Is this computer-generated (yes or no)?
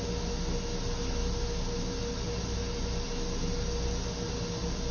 no